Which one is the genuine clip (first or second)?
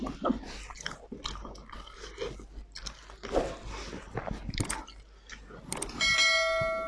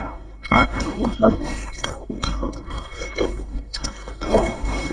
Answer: first